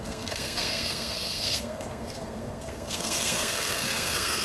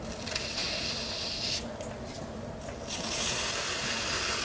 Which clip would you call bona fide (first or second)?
second